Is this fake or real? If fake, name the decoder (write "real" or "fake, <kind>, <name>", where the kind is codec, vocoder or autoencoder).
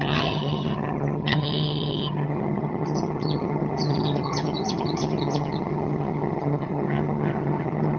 fake, vocoder, HiFi-GAN